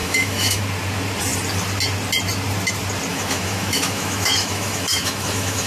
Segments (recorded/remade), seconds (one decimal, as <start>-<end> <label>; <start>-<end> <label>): 0.0-0.6 remade; 0.6-3.1 recorded; 3.1-5.7 remade